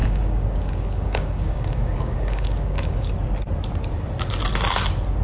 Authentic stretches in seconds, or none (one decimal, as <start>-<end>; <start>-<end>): 3.1-5.2

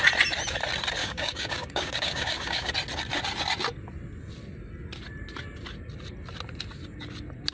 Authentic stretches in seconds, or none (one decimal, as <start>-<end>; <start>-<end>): 0.0-1.0; 2.7-7.5

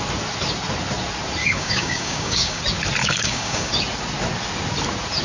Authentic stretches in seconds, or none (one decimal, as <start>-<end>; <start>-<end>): 0.0-1.4; 2.6-3.0; 3.7-5.2

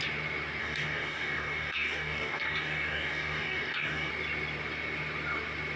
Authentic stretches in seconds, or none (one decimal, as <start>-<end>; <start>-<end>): 0.0-0.6; 4.1-5.8

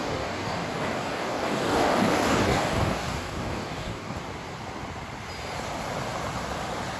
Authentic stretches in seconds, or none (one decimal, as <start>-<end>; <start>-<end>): 4.2-7.0